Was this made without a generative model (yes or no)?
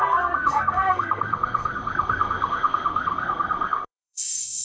no